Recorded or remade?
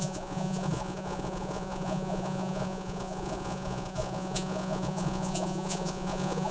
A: remade